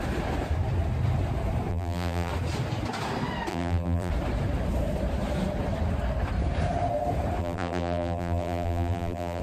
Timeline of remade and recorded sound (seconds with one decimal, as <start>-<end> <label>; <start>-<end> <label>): 0.0-1.7 recorded; 1.7-2.3 remade; 2.3-3.5 recorded; 3.5-4.1 remade; 4.1-7.4 recorded; 7.4-9.4 remade